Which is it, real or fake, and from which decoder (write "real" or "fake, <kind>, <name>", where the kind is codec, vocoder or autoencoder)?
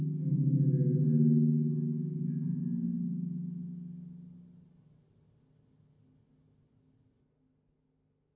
real